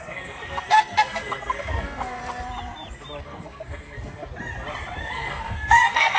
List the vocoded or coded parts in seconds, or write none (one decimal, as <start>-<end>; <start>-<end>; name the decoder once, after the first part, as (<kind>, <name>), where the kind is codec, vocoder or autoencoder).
0.0-2.2 (codec, SNAC); 3.2-4.2; 5.0-6.2